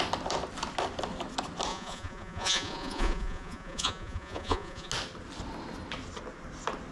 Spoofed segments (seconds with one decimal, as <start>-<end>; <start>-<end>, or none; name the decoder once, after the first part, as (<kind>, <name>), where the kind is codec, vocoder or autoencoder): 1.7-4.9 (vocoder, Vocos)